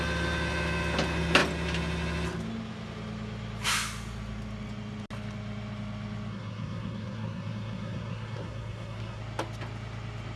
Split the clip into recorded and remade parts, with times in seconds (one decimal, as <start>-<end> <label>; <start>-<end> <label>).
0.0-6.3 recorded; 6.3-9.2 remade; 9.2-10.4 recorded